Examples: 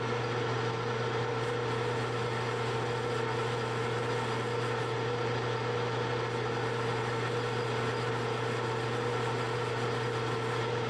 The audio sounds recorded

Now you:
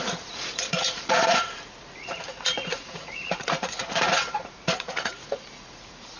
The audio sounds remade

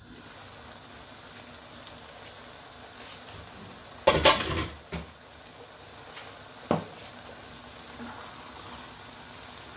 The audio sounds recorded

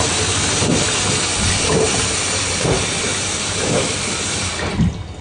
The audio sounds recorded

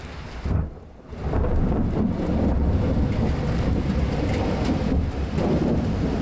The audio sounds remade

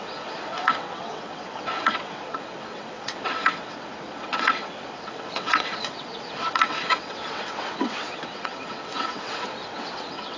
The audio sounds remade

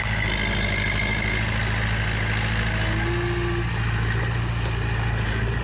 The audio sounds recorded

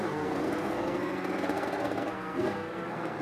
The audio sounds remade